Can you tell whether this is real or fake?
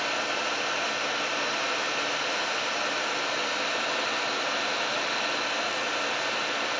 real